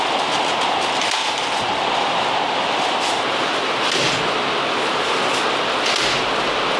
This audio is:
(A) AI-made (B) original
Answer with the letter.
B